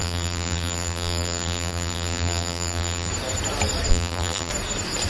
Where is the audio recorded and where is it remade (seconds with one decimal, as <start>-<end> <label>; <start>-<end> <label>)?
0.0-3.1 remade; 3.1-3.9 recorded; 3.9-4.5 remade; 4.5-5.1 recorded

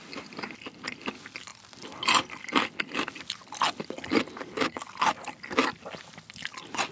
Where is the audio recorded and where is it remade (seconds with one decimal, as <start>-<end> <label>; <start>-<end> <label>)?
0.0-6.9 recorded

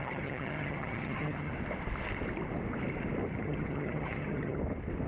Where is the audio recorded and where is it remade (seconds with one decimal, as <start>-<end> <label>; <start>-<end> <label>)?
0.0-1.5 remade; 1.5-3.4 recorded; 3.4-4.6 remade; 4.6-5.1 recorded

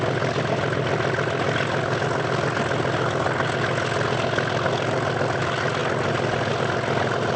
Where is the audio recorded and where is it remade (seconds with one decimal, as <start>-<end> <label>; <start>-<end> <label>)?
0.0-7.4 recorded

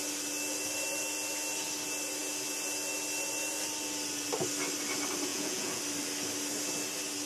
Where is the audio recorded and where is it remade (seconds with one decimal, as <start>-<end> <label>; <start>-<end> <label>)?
0.0-5.3 recorded; 5.3-5.8 remade; 5.8-7.3 recorded

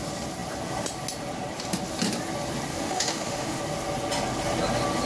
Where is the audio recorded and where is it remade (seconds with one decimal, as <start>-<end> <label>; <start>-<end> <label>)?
0.0-2.7 recorded; 2.7-3.6 remade; 3.6-5.1 recorded

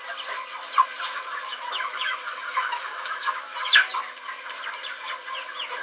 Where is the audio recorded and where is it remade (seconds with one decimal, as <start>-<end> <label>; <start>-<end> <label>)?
0.0-1.5 recorded; 1.5-3.9 remade; 3.9-5.8 recorded

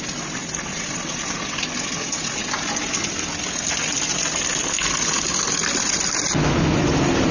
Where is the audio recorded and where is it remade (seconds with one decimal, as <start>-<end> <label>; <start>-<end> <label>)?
0.0-7.3 recorded